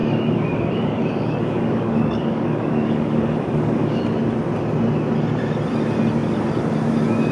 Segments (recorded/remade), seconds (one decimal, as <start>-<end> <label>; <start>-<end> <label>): 0.0-4.0 remade; 4.0-7.3 recorded